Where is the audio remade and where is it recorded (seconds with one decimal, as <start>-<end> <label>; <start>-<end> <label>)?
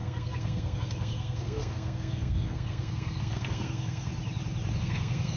0.0-4.1 remade; 4.1-4.8 recorded; 4.8-5.4 remade